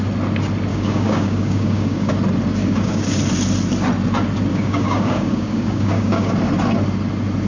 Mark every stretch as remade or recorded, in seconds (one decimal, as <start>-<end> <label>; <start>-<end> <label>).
0.0-0.7 recorded; 0.7-2.1 remade; 2.1-2.6 recorded; 2.6-3.2 remade; 3.2-4.5 recorded; 4.5-6.3 remade; 6.3-7.5 recorded